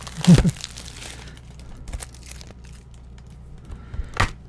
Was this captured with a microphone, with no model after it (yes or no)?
yes